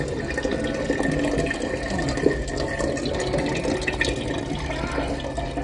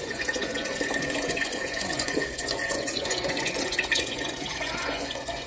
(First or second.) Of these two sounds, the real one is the first